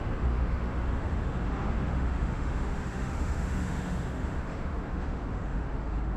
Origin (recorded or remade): remade